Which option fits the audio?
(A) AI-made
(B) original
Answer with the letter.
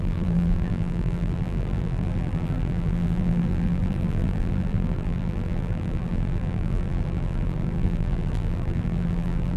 A